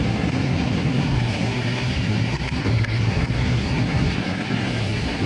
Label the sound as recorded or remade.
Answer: remade